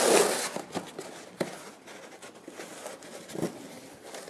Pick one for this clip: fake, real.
real